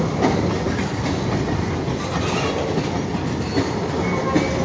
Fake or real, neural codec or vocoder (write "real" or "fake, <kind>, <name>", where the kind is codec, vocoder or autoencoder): real